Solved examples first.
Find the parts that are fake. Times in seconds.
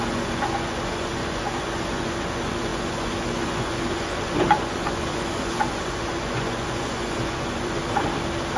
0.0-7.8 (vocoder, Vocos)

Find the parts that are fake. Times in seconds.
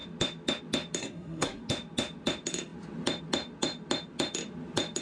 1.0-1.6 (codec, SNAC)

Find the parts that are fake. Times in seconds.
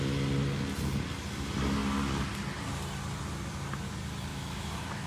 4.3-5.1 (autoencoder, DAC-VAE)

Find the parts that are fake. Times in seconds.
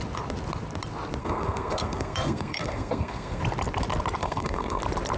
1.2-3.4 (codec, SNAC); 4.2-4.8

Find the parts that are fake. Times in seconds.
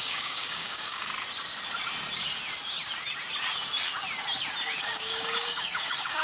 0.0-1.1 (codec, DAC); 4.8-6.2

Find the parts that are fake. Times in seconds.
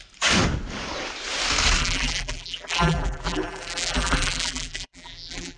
1.8-5.6 (vocoder, BigVGAN v2)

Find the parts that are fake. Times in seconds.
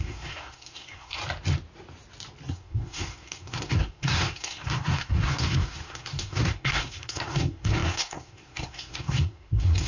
0.0-1.2 (codec, SNAC); 2.5-9.9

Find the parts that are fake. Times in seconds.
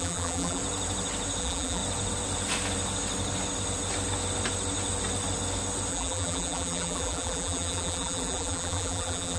0.0-0.6 (vocoder, BigVGAN v2); 1.4-1.8; 5.9-9.4